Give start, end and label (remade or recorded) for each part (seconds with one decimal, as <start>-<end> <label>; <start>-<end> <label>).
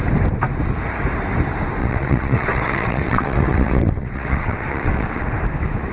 0.0-1.8 recorded; 1.8-5.3 remade; 5.3-5.9 recorded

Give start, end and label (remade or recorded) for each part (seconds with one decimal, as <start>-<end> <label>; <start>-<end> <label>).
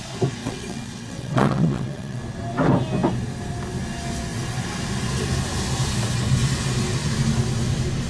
0.0-0.4 recorded; 0.4-2.2 remade; 2.2-8.1 recorded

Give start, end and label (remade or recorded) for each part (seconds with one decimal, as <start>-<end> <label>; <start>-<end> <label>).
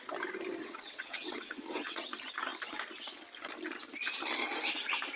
0.0-0.6 recorded; 0.6-2.0 remade; 2.0-5.2 recorded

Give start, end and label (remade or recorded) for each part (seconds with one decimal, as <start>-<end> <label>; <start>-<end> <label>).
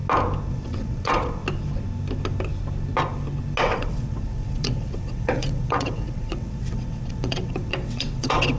0.0-0.5 recorded; 0.5-1.4 remade; 1.4-3.6 recorded; 3.6-8.6 remade